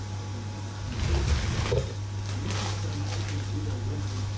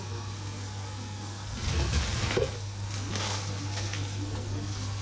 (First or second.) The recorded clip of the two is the first